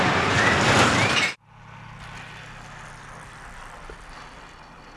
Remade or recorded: recorded